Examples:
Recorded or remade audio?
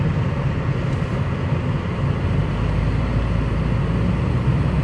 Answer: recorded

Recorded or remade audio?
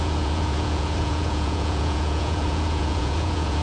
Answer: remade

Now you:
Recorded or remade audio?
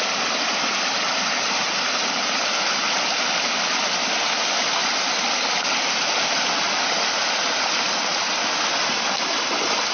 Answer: recorded